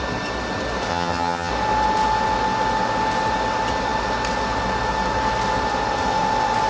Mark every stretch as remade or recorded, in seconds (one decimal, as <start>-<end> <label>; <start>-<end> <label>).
0.0-0.9 recorded; 0.9-1.5 remade; 1.5-6.7 recorded